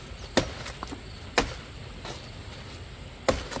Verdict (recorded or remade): recorded